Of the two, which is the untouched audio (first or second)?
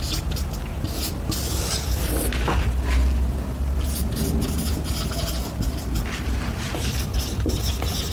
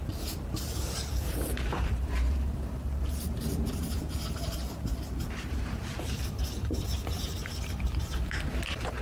first